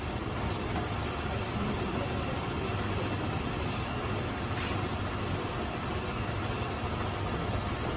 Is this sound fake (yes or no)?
no